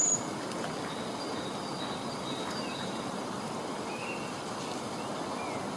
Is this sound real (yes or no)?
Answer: yes